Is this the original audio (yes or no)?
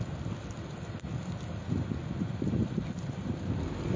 yes